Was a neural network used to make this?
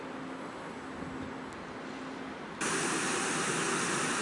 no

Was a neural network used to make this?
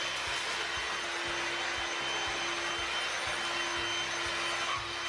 no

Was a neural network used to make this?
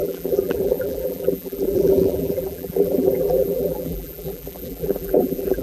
yes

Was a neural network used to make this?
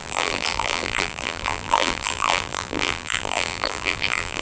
yes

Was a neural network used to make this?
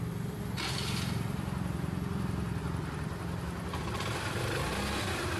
no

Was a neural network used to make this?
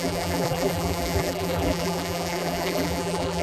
yes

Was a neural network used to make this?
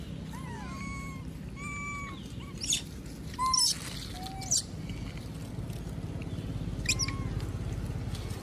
no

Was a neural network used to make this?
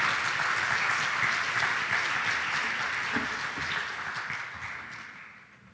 no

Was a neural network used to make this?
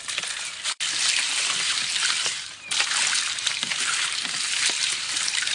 yes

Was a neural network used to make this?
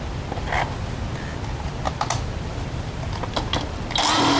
no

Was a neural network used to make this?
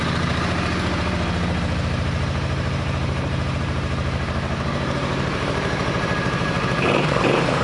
yes